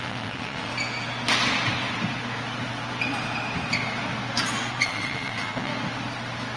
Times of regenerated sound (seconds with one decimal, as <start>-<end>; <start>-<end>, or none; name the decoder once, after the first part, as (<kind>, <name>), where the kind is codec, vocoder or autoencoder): 0.0-0.7 (vocoder, WaveNeXt); 4.7-5.7